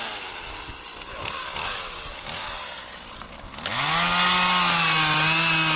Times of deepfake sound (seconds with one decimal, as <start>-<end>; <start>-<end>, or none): none